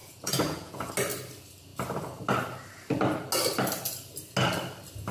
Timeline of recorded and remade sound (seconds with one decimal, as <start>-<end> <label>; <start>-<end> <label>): 0.0-0.9 remade; 0.9-5.1 recorded